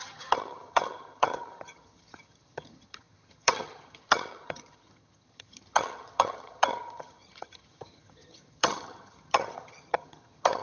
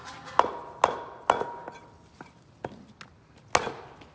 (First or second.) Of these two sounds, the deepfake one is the first